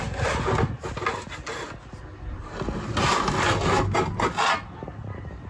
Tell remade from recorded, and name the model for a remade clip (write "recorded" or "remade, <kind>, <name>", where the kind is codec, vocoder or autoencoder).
recorded